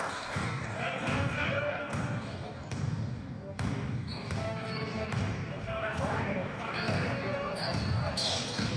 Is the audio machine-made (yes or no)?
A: yes